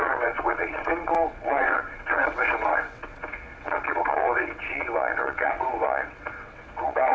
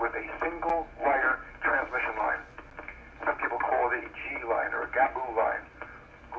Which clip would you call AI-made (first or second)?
first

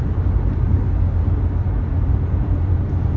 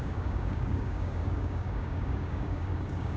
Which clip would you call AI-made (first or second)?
second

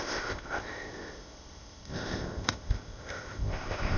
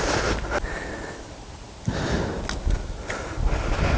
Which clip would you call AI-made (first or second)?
first